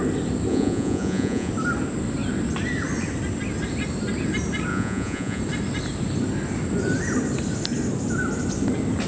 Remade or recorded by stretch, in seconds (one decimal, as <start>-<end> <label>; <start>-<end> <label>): 0.0-0.5 recorded; 0.5-1.5 remade; 1.5-4.7 recorded; 4.7-5.4 remade; 5.4-9.1 recorded